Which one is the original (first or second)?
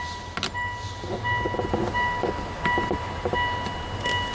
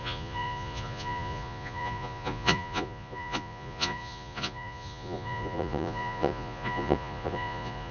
first